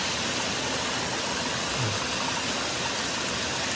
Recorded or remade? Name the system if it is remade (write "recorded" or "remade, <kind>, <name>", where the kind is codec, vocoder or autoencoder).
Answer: recorded